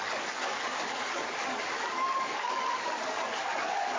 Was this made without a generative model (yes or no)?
no